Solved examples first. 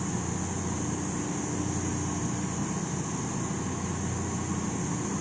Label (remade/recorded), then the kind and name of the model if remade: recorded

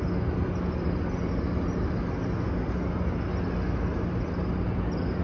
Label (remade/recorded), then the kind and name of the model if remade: recorded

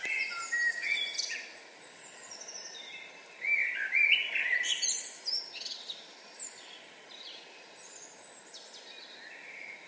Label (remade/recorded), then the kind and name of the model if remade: recorded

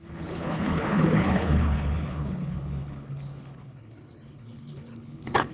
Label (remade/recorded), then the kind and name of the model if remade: remade, codec, HILCodec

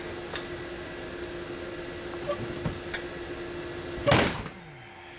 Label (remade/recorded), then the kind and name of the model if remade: recorded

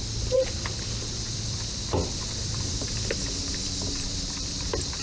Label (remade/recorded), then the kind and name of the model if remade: remade, vocoder, BigVGAN v2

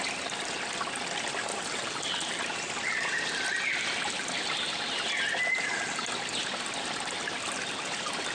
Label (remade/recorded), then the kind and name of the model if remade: recorded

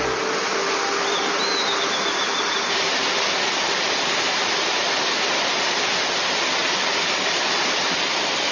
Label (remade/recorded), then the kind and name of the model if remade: recorded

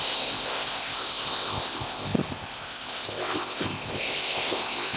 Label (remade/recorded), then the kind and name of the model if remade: remade, codec, ZipCodec